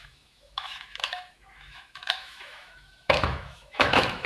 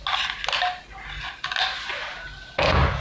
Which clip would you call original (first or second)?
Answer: second